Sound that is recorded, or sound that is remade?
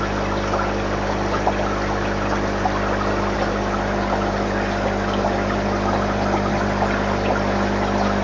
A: recorded